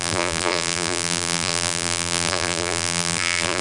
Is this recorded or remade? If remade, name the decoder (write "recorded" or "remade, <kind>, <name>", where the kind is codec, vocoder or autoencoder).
remade, vocoder, BigVGAN v2